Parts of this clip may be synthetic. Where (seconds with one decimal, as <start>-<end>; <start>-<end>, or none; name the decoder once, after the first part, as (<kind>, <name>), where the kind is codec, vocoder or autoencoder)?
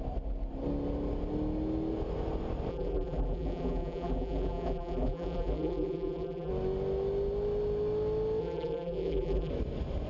2.7-6.5 (vocoder, BigVGAN v2); 8.4-9.5